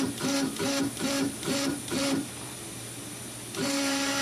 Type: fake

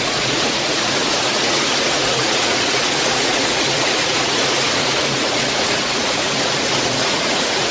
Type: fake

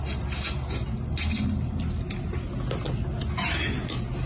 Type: real